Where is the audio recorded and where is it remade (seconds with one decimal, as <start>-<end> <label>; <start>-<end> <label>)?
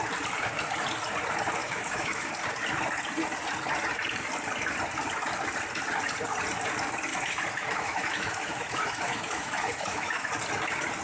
0.0-1.6 recorded; 1.6-2.3 remade; 2.3-7.1 recorded; 7.1-10.3 remade; 10.3-11.0 recorded